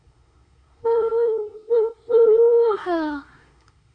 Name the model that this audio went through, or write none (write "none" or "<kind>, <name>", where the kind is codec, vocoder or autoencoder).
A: codec, SNAC